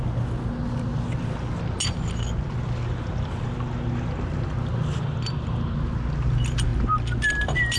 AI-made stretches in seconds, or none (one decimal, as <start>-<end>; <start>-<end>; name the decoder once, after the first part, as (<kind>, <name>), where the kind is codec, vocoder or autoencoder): none